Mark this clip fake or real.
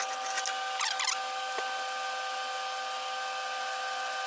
real